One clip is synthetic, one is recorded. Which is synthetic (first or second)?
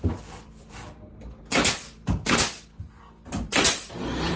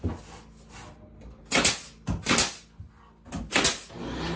first